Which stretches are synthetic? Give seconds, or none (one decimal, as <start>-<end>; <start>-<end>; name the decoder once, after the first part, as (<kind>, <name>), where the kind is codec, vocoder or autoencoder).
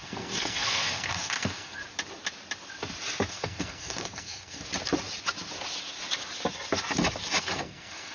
0.0-1.8 (codec, SNAC); 3.3-4.7; 7.4-8.1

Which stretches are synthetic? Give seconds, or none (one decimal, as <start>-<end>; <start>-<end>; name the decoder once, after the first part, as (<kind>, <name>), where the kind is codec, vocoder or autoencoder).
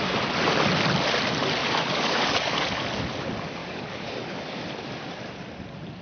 1.6-2.8 (codec, DAC); 3.6-4.6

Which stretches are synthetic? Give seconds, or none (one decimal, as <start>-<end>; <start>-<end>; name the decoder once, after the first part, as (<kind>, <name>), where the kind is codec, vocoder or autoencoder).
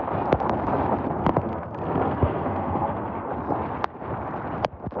1.2-3.3 (codec, SNAC)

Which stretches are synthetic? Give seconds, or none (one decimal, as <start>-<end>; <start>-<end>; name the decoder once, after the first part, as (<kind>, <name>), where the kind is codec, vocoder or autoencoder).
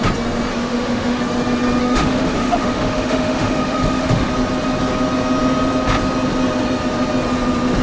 0.5-1.2 (autoencoder, DAC-VAE); 1.8-4.3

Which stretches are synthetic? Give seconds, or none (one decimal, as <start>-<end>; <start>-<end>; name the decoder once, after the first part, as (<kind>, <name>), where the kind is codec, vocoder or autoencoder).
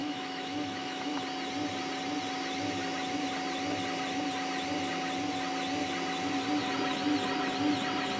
0.0-1.2 (autoencoder, DAC-VAE)